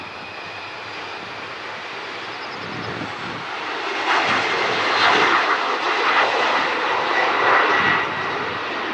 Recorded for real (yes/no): yes